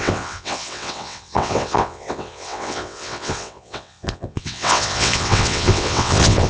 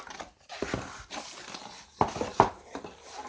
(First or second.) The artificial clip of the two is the first